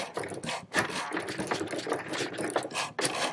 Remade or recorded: recorded